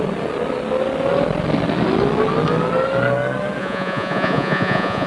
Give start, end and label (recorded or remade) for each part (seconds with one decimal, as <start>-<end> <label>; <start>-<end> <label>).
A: 0.0-3.6 recorded; 3.6-5.1 remade